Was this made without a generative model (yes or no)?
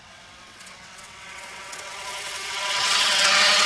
no